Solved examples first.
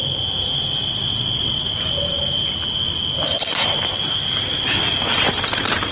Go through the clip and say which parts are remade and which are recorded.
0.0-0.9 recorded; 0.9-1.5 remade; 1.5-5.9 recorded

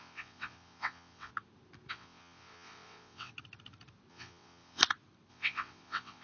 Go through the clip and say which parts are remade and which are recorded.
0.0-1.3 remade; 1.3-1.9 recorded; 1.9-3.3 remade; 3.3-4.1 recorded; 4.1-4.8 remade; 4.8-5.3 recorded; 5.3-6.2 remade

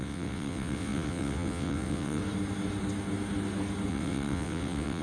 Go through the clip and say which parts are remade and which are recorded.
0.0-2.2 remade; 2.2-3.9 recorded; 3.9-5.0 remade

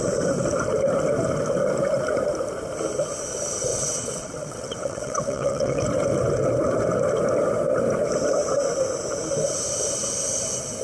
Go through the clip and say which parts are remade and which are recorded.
0.0-3.7 recorded; 3.7-5.8 remade; 5.8-10.8 recorded

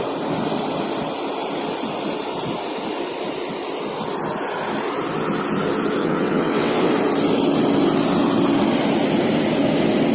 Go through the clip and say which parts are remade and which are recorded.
0.0-6.0 recorded; 6.0-6.9 remade; 6.9-10.1 recorded

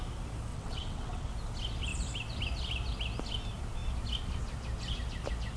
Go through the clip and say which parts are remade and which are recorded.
0.0-0.5 recorded; 0.5-1.3 remade; 1.3-5.6 recorded